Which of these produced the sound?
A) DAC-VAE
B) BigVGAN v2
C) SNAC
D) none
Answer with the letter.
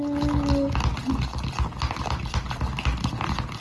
D